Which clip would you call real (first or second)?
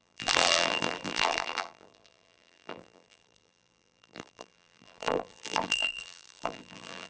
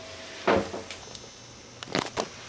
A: second